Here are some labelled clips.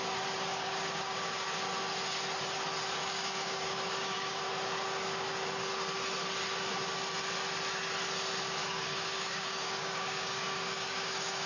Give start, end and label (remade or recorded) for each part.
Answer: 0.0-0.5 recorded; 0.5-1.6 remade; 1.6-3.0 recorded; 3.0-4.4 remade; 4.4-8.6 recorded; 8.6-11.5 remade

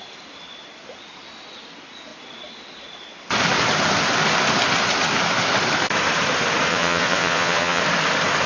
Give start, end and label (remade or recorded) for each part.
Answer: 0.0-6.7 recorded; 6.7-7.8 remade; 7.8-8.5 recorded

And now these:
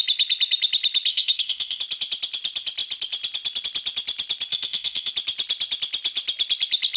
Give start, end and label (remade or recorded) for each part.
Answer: 0.0-1.1 recorded; 1.1-1.8 remade; 1.8-4.5 recorded; 4.5-5.1 remade; 5.1-7.0 recorded

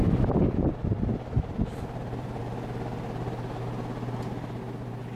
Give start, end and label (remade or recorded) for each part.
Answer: 0.0-0.8 recorded; 0.8-2.4 remade; 2.4-5.2 recorded

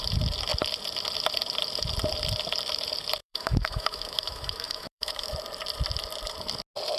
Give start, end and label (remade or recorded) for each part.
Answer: 0.0-3.2 recorded; 3.2-5.3 remade; 5.3-7.0 recorded

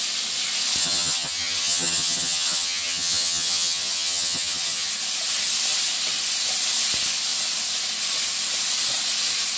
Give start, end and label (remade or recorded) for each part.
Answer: 0.0-0.8 recorded; 0.8-4.9 remade; 4.9-9.6 recorded

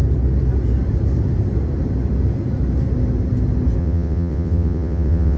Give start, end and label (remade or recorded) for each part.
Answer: 0.0-3.8 recorded; 3.8-5.4 remade